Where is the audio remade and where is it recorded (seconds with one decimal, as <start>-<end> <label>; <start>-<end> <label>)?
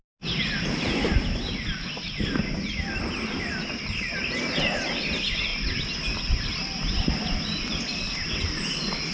0.0-9.1 recorded